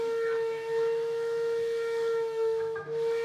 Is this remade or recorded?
remade